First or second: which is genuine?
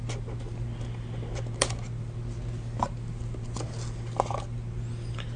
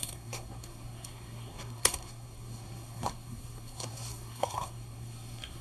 first